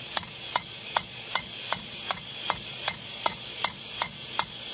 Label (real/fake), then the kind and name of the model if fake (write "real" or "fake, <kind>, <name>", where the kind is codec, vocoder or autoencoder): fake, vocoder, Vocos